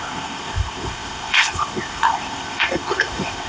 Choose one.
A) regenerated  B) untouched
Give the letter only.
A